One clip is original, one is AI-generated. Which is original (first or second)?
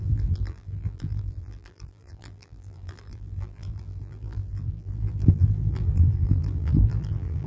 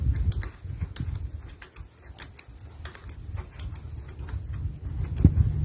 second